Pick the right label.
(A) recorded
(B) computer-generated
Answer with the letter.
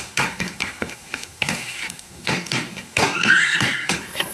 B